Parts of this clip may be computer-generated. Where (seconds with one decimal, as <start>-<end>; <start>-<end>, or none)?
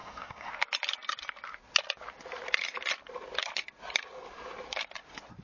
0.0-0.5